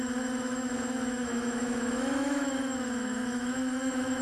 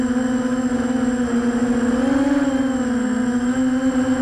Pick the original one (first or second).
second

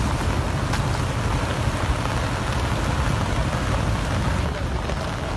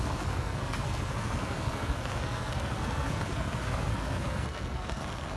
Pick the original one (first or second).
first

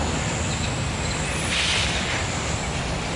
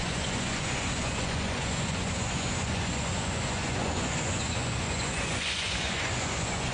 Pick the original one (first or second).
first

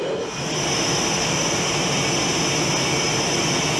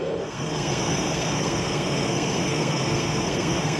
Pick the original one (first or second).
first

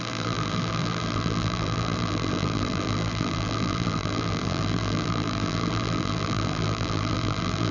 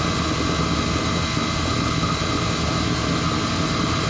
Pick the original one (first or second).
second